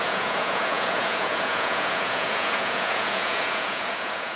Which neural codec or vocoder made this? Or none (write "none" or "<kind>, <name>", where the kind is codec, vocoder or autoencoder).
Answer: vocoder, Vocos